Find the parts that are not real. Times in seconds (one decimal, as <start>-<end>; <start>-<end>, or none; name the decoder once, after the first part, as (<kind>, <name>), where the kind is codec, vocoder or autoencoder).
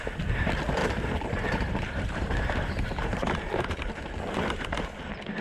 0.8-4.0 (vocoder, BigVGAN v2)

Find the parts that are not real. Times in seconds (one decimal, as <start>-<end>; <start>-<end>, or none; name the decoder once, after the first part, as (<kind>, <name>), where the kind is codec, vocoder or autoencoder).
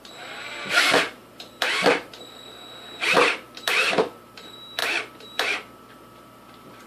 0.0-6.9 (vocoder, BigVGAN v2)